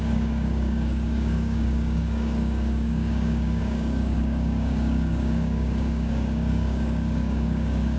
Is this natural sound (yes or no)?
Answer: no